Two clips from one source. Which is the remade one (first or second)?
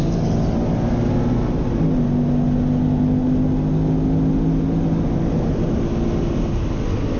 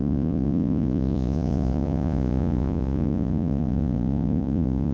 second